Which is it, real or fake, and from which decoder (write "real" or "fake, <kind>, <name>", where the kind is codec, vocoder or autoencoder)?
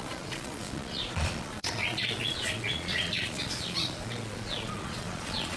fake, vocoder, Vocos